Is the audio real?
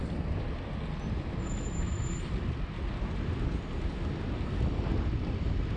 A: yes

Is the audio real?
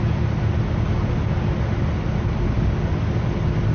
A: yes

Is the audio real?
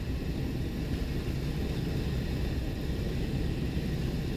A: yes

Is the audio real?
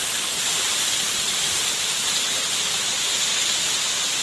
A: yes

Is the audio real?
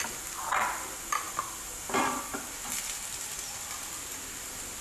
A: yes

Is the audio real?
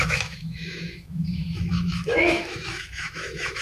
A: no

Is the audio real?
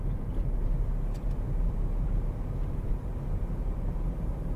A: yes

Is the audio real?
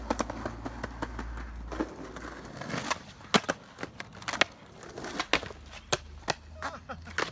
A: yes